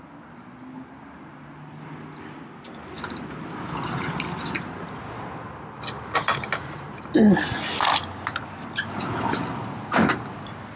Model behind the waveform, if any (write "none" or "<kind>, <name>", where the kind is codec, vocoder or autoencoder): none